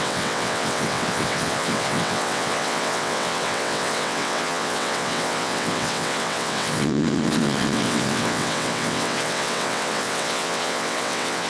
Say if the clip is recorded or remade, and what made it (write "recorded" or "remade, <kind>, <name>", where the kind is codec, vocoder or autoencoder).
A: remade, vocoder, WaveNeXt